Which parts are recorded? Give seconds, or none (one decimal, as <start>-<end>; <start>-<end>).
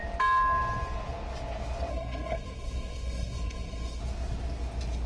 0.0-1.9; 4.0-5.1